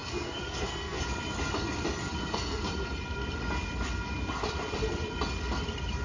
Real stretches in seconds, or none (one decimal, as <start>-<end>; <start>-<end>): 1.0-2.2; 2.7-6.0